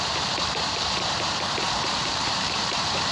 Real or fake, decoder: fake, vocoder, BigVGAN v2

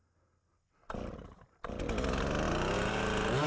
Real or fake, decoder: real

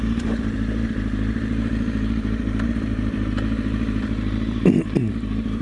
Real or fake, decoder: fake, vocoder, BigVGAN v2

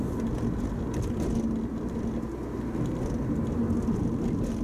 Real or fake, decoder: real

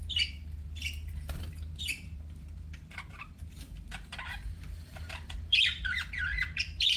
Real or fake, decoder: fake, vocoder, BigVGAN v2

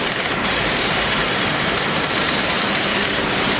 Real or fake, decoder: fake, vocoder, BigVGAN v2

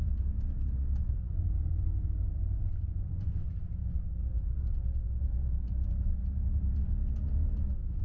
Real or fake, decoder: fake, vocoder, BigVGAN v2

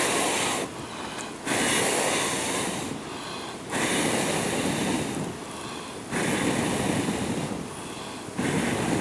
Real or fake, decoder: real